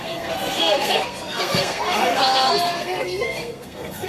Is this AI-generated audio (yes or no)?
yes